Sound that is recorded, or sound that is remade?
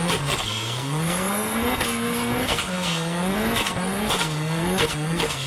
remade